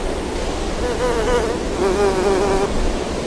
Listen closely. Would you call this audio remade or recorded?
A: recorded